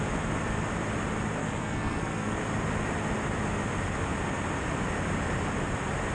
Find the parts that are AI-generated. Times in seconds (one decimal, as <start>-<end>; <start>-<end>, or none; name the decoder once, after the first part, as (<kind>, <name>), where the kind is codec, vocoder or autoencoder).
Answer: 1.4-2.4 (codec, SNAC)